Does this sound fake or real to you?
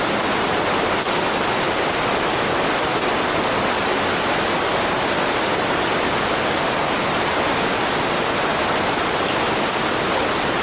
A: real